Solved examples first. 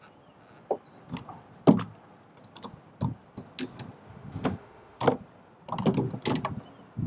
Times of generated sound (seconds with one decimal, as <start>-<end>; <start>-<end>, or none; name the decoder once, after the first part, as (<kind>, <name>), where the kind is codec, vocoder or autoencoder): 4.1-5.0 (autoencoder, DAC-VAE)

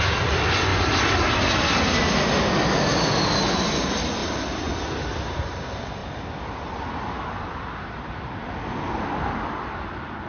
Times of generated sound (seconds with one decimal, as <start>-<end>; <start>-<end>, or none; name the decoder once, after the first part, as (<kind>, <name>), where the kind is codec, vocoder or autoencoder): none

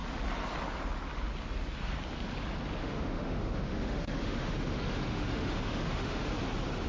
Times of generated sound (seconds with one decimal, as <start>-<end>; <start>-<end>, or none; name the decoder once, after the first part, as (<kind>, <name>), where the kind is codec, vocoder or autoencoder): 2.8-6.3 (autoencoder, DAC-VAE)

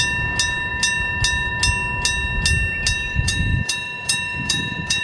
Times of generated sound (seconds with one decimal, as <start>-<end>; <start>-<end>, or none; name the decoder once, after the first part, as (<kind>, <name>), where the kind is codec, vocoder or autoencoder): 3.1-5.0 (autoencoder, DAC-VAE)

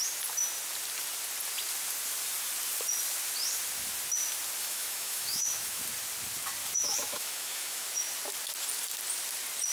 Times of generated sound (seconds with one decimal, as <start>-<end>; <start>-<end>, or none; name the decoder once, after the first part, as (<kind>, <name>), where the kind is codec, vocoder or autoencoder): 4.6-5.8 (autoencoder, DAC-VAE); 6.6-8.1

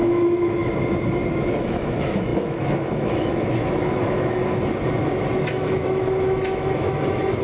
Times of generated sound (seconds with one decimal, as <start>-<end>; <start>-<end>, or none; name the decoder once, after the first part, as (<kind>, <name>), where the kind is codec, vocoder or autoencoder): 0.0-0.6 (autoencoder, DAC-VAE); 1.4-4.4; 5.4-7.4

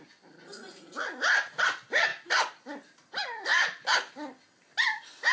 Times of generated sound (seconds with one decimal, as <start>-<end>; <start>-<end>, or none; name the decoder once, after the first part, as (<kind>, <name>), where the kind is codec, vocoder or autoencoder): none

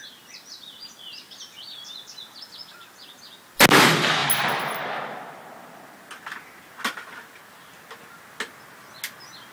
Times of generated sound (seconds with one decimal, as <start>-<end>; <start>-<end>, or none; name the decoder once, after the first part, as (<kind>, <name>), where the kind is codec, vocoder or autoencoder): none